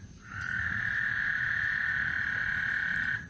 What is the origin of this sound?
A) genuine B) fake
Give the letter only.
B